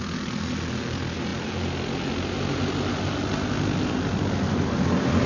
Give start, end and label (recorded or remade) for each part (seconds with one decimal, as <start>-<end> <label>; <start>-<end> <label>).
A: 0.0-5.3 recorded